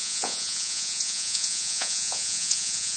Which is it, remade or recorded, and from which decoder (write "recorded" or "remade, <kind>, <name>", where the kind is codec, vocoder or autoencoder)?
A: remade, vocoder, Vocos